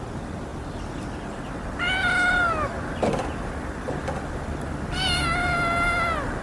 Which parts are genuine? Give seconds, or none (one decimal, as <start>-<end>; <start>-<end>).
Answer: 0.0-6.4